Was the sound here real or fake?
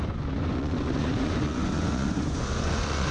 fake